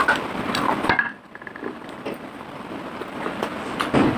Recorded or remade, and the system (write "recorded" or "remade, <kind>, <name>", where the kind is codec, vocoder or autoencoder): recorded